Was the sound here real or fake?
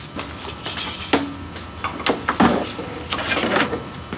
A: real